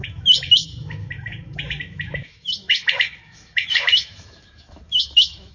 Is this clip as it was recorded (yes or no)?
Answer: no